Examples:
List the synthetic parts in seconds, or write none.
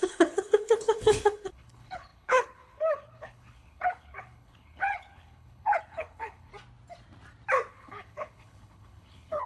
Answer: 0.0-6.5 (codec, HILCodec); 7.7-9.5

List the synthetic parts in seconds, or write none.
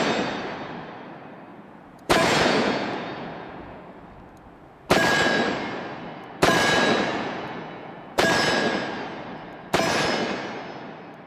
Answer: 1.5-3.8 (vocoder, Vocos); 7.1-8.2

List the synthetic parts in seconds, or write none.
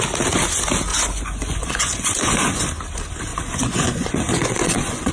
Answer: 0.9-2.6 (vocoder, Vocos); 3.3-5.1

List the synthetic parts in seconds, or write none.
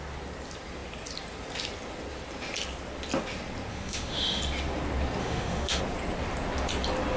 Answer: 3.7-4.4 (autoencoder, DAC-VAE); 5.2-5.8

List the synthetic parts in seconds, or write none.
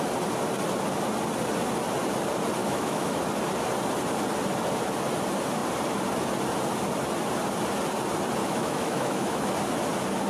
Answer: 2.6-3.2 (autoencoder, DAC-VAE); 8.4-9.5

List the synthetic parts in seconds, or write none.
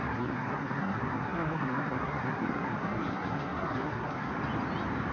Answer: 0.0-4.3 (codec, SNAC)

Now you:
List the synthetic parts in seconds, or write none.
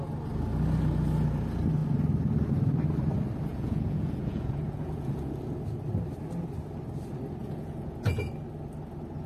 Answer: 3.5-5.2 (vocoder, Vocos); 7.4-8.3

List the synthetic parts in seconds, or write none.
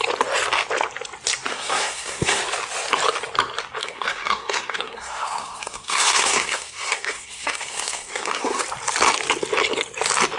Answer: 1.5-2.4 (codec, SNAC); 3.8-8.6